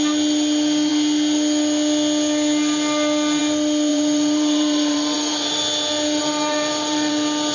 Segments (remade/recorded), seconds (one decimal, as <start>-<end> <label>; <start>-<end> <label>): 0.0-3.9 recorded; 3.9-5.6 remade; 5.6-6.2 recorded; 6.2-7.1 remade; 7.1-7.5 recorded